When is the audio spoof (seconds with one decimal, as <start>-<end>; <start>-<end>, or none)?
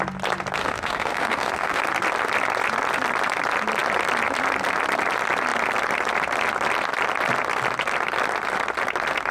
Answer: 0.6-1.8